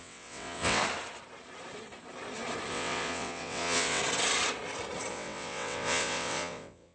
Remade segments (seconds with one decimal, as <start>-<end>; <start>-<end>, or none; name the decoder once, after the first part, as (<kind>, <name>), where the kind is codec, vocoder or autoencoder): 0.0-0.8 (vocoder, WaveNeXt); 2.7-4.0; 5.1-6.9